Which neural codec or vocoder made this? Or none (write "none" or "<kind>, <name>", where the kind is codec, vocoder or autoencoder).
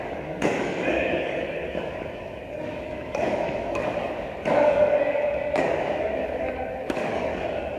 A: codec, DAC